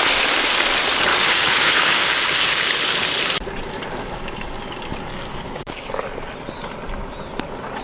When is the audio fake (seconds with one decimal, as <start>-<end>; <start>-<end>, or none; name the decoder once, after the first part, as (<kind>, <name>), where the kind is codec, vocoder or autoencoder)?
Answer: 1.1-2.7 (codec, DAC); 5.1-5.9